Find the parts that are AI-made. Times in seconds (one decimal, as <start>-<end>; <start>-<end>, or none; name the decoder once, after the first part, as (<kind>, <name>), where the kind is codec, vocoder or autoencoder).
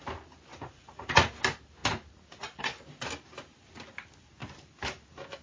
0.5-1.3 (vocoder, Vocos)